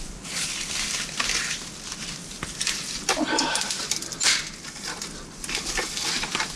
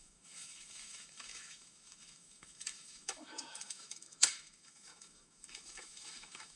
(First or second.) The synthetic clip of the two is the second